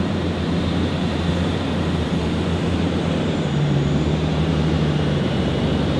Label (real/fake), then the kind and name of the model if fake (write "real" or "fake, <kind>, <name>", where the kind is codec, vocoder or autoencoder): fake, vocoder, BigVGAN v2